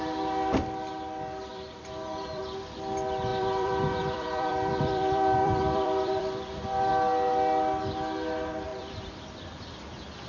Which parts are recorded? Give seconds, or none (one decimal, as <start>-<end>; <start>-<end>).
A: 0.0-1.5; 2.4-3.3; 6.9-8.7; 9.7-10.3